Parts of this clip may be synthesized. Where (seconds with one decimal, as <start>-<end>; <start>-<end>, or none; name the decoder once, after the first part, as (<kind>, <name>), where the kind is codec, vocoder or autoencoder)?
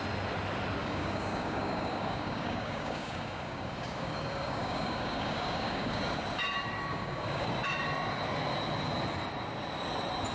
0.8-6.0 (codec, DAC); 6.9-7.5